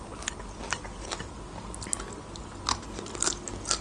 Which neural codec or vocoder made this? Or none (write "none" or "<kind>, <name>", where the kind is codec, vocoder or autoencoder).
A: none